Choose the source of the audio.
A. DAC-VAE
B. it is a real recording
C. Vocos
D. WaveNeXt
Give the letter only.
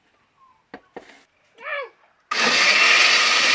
B